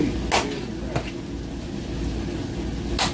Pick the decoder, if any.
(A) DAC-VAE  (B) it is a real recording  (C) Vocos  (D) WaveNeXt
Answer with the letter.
B